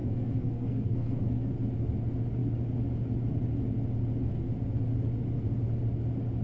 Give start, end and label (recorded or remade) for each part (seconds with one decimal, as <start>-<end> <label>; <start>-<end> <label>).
0.0-1.5 remade; 1.5-6.4 recorded

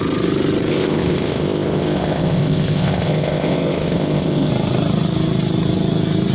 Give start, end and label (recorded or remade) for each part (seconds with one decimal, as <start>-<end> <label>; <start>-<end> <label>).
0.0-0.7 recorded; 0.7-4.5 remade; 4.5-6.3 recorded

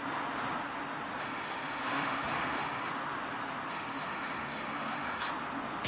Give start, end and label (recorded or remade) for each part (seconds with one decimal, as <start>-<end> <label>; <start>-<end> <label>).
0.0-1.2 recorded; 1.2-2.9 remade; 2.9-3.7 recorded; 3.7-5.3 remade; 5.3-5.9 recorded

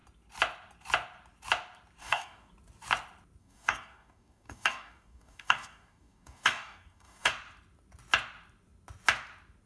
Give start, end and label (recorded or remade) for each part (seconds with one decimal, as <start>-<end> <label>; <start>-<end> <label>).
0.0-2.0 recorded; 2.0-2.5 remade; 2.5-3.4 recorded; 3.4-7.3 remade; 7.3-9.7 recorded

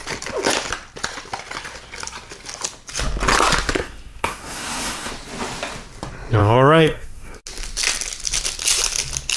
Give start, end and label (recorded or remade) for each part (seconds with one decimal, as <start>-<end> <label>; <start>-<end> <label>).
0.0-3.8 recorded; 3.8-5.1 remade; 5.1-6.4 recorded; 6.4-7.4 remade; 7.4-9.4 recorded

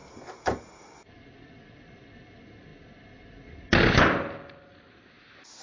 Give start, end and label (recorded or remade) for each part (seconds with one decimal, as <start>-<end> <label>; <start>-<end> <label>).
0.0-5.6 recorded

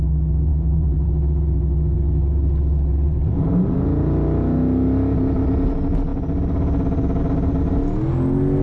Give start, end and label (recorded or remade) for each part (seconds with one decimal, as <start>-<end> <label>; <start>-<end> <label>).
0.0-0.5 recorded; 0.5-1.1 remade; 1.1-8.6 recorded

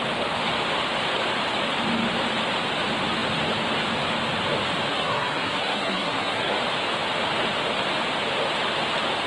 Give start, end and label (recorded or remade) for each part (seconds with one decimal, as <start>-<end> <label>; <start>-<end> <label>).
0.0-4.9 recorded; 4.9-6.6 remade; 6.6-9.3 recorded